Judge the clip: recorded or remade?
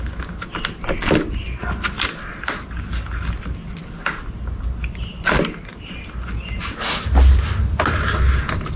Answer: recorded